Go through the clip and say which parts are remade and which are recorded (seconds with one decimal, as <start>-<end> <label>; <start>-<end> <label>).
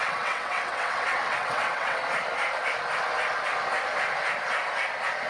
0.0-2.0 remade; 2.0-5.3 recorded